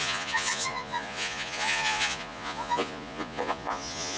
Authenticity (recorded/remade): remade